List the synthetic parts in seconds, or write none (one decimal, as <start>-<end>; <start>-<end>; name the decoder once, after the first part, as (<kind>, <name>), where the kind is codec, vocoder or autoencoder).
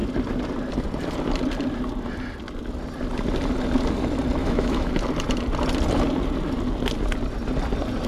4.4-4.9 (autoencoder, DAC-VAE)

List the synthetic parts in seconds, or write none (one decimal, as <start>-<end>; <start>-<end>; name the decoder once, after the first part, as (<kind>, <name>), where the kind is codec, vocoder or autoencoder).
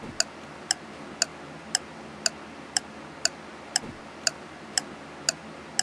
none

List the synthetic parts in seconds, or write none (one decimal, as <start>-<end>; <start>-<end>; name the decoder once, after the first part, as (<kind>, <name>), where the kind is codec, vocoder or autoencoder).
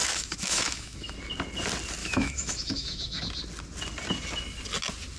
0.0-1.1 (autoencoder, DAC-VAE); 2.0-3.2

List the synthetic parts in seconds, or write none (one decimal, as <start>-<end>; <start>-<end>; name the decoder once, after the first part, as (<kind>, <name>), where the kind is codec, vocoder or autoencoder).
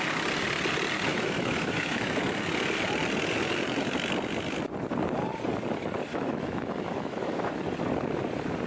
1.1-2.2 (autoencoder, DAC-VAE); 6.1-7.5